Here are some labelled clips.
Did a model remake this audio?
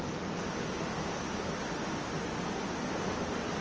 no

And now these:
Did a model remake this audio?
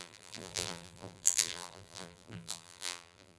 yes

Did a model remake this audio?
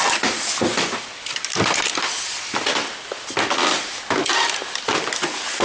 no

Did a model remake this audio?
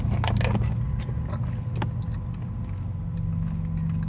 no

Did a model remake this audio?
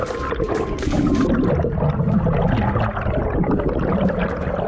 no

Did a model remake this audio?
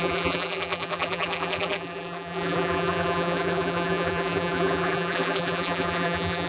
yes